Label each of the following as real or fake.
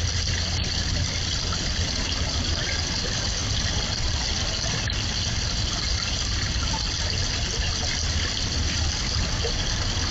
real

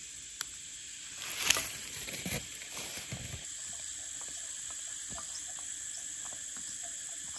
real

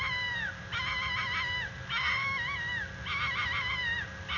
real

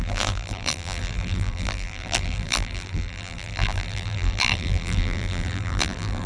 fake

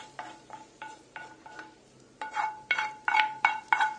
fake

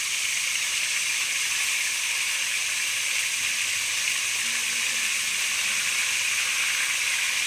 real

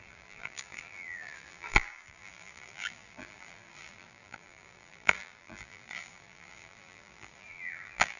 fake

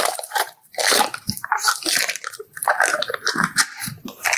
fake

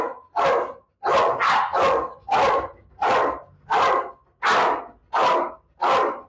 real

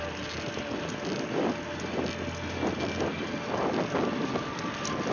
real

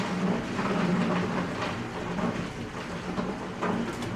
real